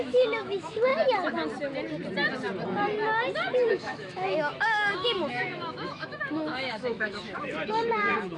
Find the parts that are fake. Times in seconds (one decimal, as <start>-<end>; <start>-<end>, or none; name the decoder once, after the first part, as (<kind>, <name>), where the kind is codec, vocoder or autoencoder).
0.0-0.9 (autoencoder, DAC-VAE); 3.7-8.4